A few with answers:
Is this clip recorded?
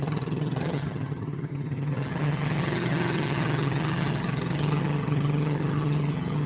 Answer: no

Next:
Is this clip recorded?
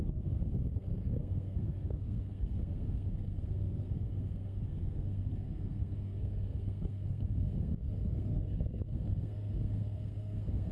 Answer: no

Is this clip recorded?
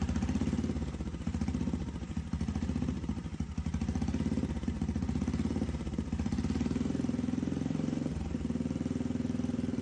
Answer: no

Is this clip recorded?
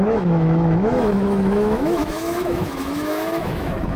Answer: no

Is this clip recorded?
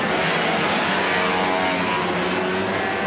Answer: yes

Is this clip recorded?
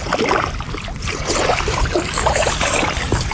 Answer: no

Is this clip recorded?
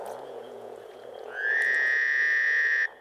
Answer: no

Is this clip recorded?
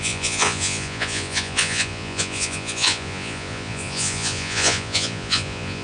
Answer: no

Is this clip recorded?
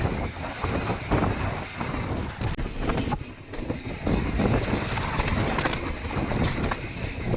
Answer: yes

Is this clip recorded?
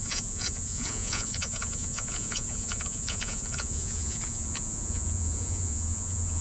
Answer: no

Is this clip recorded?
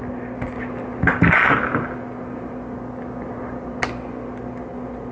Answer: yes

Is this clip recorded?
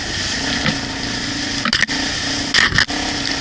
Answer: yes